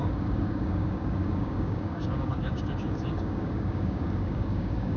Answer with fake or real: fake